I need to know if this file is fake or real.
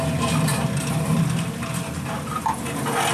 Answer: real